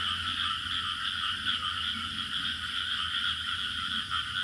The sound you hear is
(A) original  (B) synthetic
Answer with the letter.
A